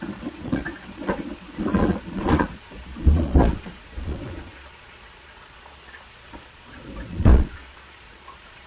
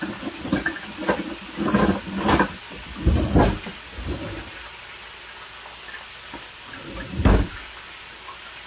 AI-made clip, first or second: first